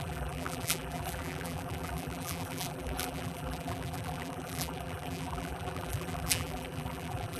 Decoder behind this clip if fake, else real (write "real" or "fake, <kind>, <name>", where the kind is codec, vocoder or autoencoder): fake, vocoder, BigVGAN v2